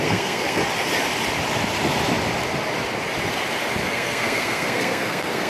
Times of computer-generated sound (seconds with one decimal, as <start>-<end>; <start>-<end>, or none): 0.0-0.6; 3.9-5.5